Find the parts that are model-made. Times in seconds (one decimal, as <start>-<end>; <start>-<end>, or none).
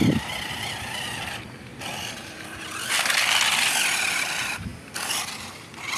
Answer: 0.5-1.7; 2.6-4.7; 5.4-6.0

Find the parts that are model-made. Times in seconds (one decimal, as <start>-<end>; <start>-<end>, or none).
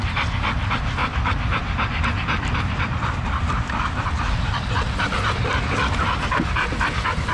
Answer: 1.0-4.1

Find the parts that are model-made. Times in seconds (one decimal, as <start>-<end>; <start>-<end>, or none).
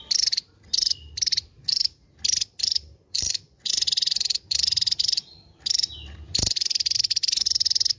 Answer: 3.1-3.7